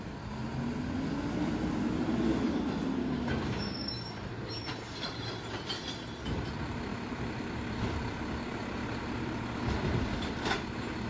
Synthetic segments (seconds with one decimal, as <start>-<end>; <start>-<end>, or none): 3.0-3.9